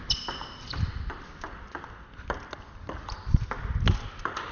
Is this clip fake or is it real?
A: real